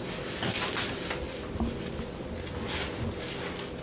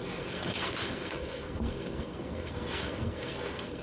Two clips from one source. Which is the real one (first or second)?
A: first